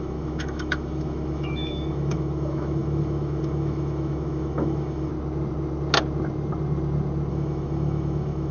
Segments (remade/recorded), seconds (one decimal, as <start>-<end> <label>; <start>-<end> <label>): 0.0-5.1 remade; 5.1-7.3 recorded; 7.3-8.5 remade